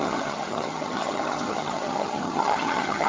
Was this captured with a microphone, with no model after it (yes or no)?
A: no